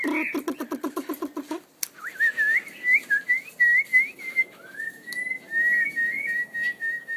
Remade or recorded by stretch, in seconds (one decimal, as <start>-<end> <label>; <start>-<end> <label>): 0.0-3.9 recorded; 3.9-7.2 remade